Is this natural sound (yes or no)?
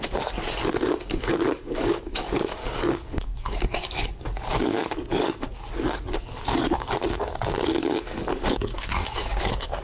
no